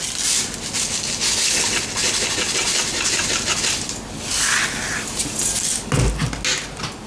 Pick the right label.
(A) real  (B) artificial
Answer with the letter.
A